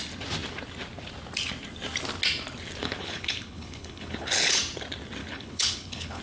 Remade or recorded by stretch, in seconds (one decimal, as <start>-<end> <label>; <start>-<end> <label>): 0.0-2.8 recorded; 2.8-4.6 remade; 4.6-5.2 recorded; 5.2-6.2 remade